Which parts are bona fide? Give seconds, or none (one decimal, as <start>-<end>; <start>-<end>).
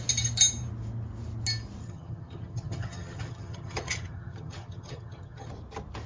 0.0-1.8; 5.5-6.1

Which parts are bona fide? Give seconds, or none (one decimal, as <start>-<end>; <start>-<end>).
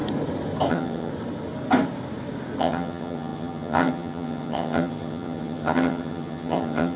0.0-0.7; 1.1-2.6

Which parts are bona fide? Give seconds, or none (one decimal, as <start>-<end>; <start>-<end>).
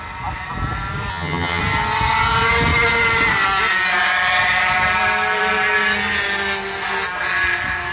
0.0-1.1; 1.6-7.9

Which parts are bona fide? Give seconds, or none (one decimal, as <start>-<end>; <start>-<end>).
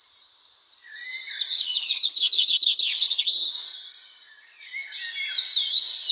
0.0-1.5; 2.5-6.1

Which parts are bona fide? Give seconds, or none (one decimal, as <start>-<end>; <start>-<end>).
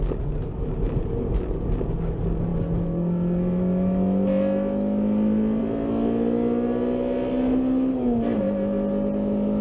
0.0-9.6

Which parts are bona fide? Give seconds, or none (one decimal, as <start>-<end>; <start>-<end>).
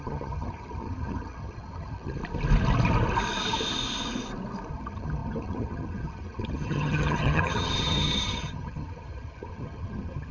2.2-4.7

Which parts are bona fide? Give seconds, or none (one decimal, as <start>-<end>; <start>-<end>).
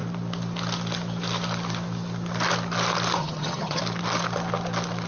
0.0-3.2; 3.8-5.1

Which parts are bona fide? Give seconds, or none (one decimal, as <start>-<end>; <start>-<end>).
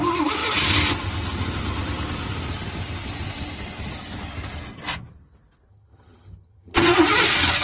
0.0-5.7; 6.9-7.6